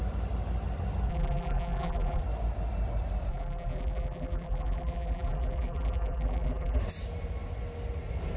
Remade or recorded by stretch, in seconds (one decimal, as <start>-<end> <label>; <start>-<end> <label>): 0.0-1.1 recorded; 1.1-2.2 remade; 2.2-3.3 recorded; 3.3-6.8 remade; 6.8-8.4 recorded